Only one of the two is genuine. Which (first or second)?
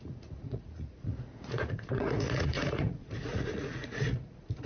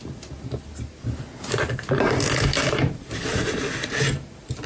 second